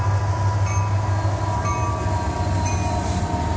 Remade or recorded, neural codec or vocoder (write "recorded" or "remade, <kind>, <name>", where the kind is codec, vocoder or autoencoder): recorded